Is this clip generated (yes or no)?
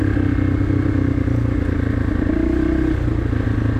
no